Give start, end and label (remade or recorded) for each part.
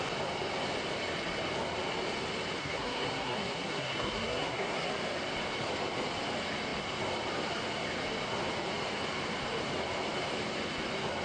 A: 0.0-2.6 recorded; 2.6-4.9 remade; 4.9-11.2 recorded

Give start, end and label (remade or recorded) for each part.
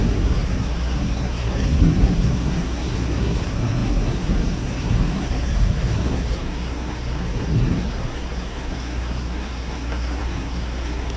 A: 0.0-11.2 remade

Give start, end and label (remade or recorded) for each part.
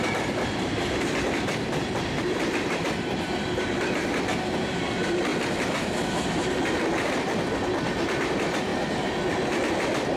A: 0.0-5.3 remade; 5.3-8.2 recorded; 8.2-8.7 remade; 8.7-9.6 recorded; 9.6-10.2 remade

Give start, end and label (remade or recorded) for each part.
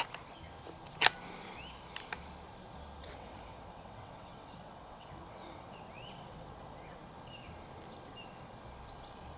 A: 0.0-3.0 recorded; 3.0-7.0 remade; 7.0-9.4 recorded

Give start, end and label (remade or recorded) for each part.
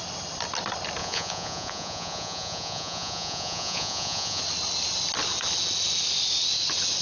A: 0.0-1.0 recorded; 1.0-4.4 remade; 4.4-7.0 recorded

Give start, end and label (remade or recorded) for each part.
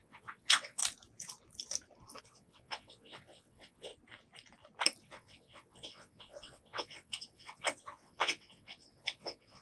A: 0.0-0.8 remade; 0.8-2.2 recorded; 2.2-3.9 remade; 3.9-5.0 recorded; 5.0-9.6 remade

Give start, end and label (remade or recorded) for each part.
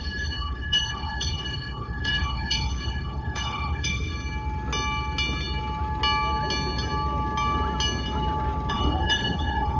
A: 0.0-4.1 remade; 4.1-8.7 recorded; 8.7-9.8 remade